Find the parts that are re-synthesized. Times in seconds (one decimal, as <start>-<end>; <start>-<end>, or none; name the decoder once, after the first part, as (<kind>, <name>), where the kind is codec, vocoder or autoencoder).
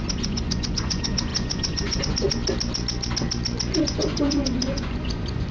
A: 0.0-2.4 (vocoder, Vocos); 3.8-5.5